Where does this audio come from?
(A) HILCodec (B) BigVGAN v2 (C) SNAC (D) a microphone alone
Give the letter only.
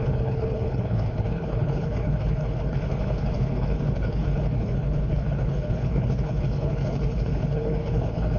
A